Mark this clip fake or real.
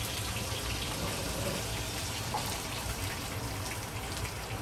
fake